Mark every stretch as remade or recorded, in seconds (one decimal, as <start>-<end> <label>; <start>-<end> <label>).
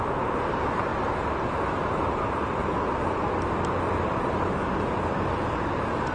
0.0-0.9 remade; 0.9-1.4 recorded; 1.4-2.6 remade; 2.6-4.0 recorded; 4.0-6.1 remade